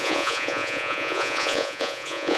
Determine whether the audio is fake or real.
fake